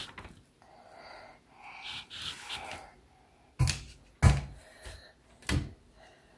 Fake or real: real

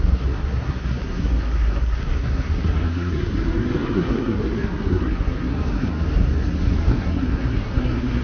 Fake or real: fake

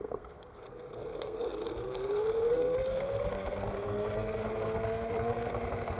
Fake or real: fake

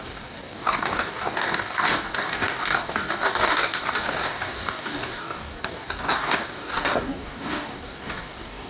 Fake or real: fake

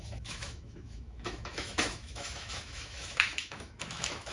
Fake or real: fake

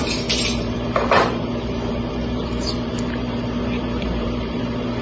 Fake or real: fake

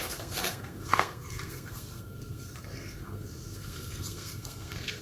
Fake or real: fake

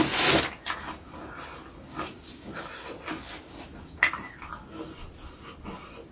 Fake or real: real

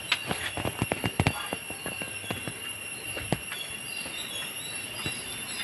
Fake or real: real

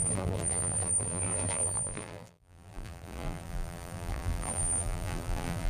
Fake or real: fake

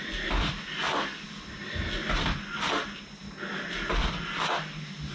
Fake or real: real